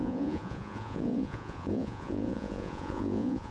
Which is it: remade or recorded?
remade